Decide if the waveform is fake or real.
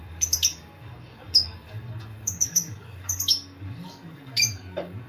fake